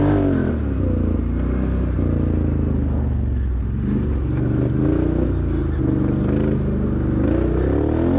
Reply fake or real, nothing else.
real